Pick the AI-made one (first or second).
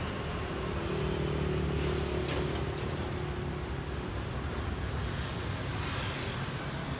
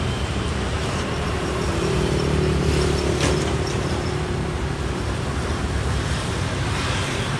second